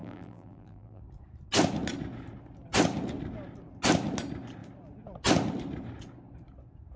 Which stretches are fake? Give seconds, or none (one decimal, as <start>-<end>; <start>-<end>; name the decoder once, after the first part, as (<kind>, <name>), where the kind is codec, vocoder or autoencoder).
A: 0.0-1.0 (vocoder, BigVGAN v2)

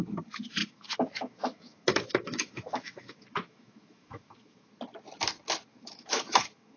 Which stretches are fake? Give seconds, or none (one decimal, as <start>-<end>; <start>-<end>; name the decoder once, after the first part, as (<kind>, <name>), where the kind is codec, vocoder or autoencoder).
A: 0.6-4.7 (autoencoder, DAC-VAE); 5.7-6.8

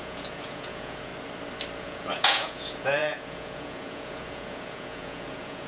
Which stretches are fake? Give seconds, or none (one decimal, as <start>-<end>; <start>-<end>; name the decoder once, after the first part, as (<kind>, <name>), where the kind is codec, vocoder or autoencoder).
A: 0.0-1.1 (vocoder, Vocos); 1.8-5.7

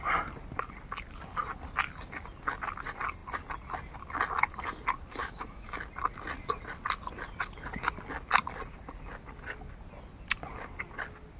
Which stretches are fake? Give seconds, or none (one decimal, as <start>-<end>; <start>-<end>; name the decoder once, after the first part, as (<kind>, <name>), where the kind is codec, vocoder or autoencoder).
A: 5.2-5.7 (autoencoder, DAC-VAE)

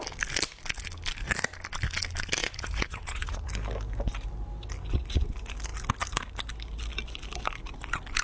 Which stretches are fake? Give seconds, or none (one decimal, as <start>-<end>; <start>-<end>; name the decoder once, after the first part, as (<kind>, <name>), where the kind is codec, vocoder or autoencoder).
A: 2.4-3.5 (vocoder, Vocos)

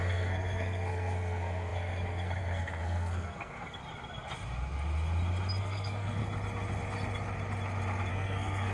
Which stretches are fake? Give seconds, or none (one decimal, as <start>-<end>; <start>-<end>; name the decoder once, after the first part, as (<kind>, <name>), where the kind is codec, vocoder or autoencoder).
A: 0.0-3.8 (codec, SNAC); 5.6-6.2; 8.1-8.7

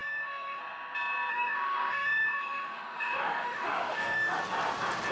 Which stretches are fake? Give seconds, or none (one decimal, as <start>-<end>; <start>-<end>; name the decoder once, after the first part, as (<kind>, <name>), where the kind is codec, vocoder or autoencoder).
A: 0.0-0.6 (autoencoder, DAC-VAE); 1.3-4.4